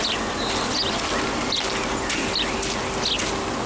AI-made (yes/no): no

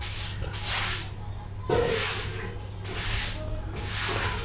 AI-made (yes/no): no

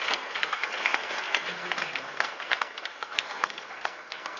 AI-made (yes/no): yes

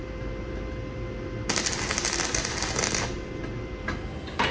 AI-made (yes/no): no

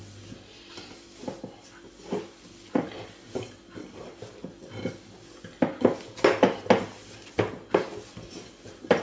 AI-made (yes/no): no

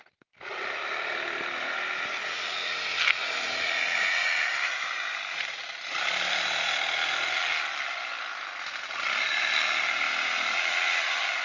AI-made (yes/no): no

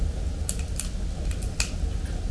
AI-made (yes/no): no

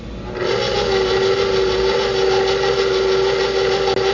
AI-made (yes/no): no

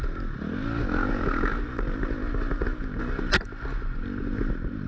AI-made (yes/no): no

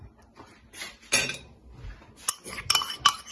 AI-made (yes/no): no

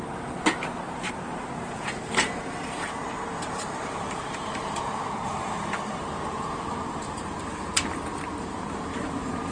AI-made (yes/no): yes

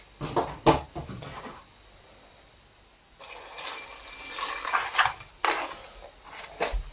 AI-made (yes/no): no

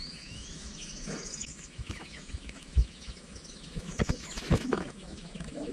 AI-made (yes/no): yes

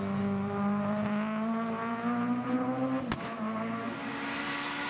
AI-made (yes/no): no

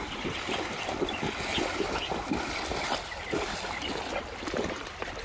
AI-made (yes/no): no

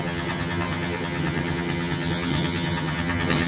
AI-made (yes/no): yes